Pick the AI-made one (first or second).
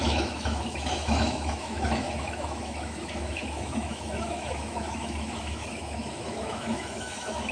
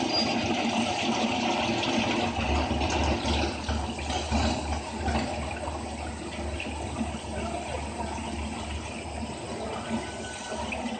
first